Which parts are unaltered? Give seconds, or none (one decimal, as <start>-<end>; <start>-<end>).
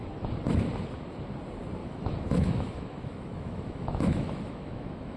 0.0-1.8